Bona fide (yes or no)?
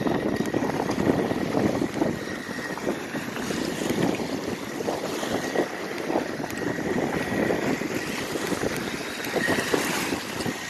yes